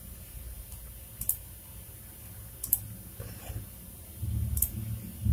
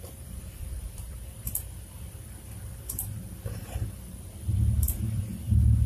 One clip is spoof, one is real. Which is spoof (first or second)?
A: second